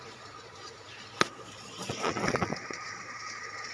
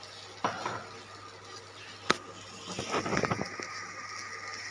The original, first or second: second